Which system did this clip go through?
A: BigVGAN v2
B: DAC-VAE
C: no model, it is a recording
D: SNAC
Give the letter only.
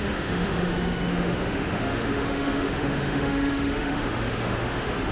B